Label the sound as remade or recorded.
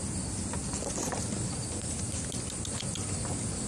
recorded